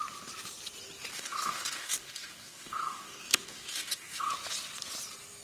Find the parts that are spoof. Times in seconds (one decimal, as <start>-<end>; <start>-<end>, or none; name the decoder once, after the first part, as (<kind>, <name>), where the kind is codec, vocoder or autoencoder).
1.1-4.3 (codec, DAC)